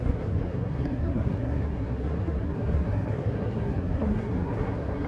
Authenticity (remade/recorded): remade